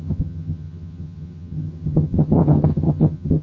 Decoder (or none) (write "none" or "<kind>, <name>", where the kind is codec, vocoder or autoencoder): vocoder, HiFi-GAN